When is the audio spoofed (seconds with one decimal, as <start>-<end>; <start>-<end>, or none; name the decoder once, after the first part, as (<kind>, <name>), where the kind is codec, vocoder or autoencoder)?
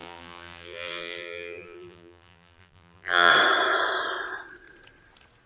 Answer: 0.0-3.3 (vocoder, BigVGAN v2)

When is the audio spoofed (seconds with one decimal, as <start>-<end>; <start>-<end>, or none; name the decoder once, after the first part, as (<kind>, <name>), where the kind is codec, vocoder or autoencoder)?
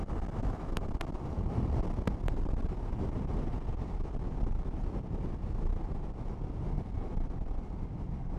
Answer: none